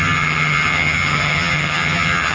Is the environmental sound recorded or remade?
remade